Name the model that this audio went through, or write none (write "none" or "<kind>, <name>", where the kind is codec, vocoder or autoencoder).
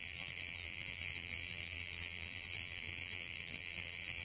vocoder, BigVGAN v2